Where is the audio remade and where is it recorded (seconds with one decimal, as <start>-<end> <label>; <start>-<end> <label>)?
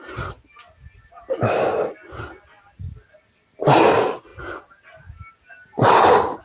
0.0-6.4 recorded